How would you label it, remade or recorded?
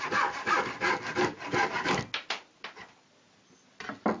recorded